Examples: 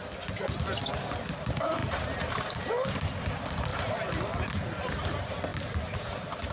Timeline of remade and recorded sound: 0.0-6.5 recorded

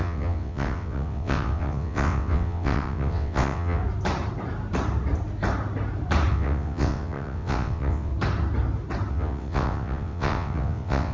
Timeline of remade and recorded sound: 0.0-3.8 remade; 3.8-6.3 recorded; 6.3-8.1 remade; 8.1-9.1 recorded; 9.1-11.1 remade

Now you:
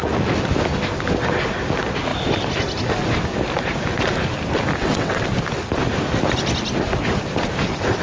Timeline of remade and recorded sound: 0.0-4.8 recorded; 4.8-5.3 remade; 5.3-8.0 recorded

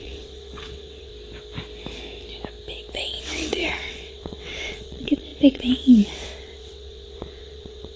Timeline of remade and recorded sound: 0.0-1.1 remade; 1.1-2.9 recorded; 2.9-8.0 remade

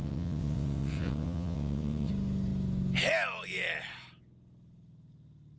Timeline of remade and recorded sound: 0.0-2.1 remade; 2.1-5.6 recorded